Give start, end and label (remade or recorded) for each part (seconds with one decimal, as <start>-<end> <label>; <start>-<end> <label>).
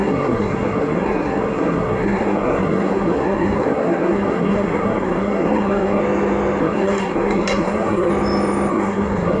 0.0-6.0 remade; 6.0-6.6 recorded; 6.6-8.1 remade; 8.1-8.7 recorded; 8.7-9.4 remade